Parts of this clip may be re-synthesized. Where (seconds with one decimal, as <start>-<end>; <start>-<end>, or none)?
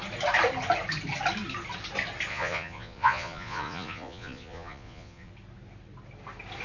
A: 2.3-5.3